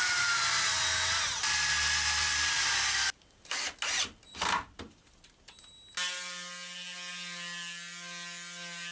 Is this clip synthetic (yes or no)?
no